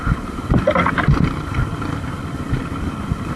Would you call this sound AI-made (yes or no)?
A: yes